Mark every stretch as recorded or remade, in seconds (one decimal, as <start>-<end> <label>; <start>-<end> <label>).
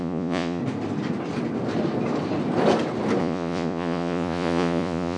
0.0-0.6 remade; 0.6-3.2 recorded; 3.2-5.2 remade